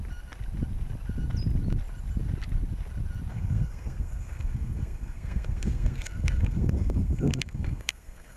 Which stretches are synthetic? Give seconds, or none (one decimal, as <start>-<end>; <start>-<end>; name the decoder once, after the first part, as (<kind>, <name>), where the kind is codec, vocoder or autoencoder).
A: 3.3-8.4 (codec, SNAC)